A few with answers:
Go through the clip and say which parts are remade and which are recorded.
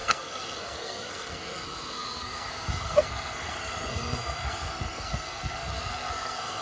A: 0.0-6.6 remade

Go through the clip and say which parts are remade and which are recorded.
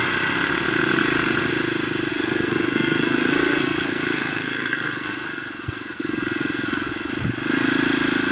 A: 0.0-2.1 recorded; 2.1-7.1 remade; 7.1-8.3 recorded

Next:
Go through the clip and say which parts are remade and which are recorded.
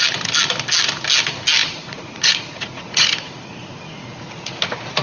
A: 0.0-1.6 recorded; 1.6-4.6 remade; 4.6-5.0 recorded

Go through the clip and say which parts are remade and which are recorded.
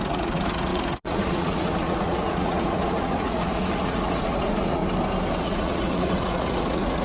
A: 0.0-4.8 remade; 4.8-5.4 recorded; 5.4-7.0 remade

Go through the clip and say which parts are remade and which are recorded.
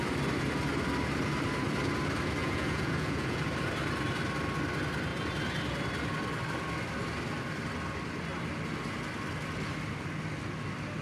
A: 0.0-2.4 recorded; 2.4-3.4 remade; 3.4-11.0 recorded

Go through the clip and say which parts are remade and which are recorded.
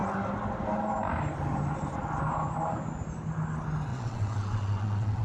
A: 0.0-3.9 recorded; 3.9-5.2 remade